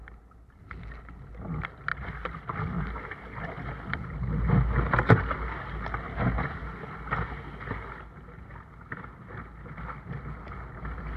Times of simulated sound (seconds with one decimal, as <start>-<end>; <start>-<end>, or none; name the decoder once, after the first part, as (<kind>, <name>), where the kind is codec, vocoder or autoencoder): none